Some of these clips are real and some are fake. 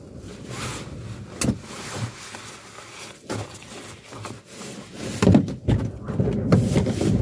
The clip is real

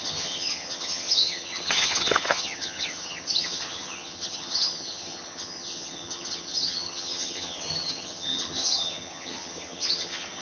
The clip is fake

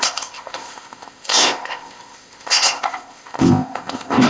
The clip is fake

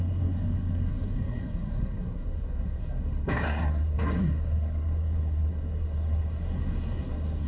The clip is fake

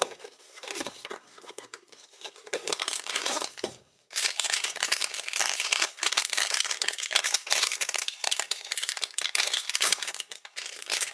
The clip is fake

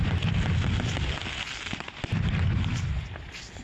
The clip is real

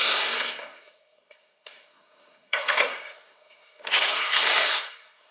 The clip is fake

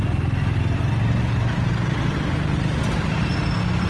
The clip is real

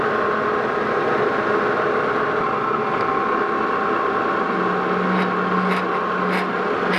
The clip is real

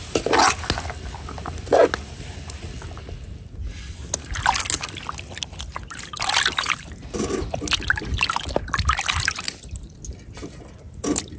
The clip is real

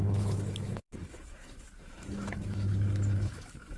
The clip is fake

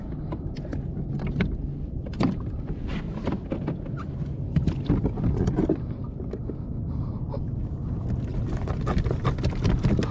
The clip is real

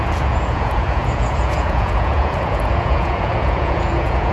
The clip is fake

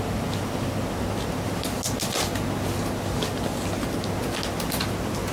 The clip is real